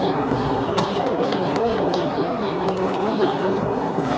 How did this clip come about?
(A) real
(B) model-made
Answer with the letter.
B